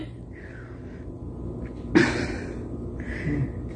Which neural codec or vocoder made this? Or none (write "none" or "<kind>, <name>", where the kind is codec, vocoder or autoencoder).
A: none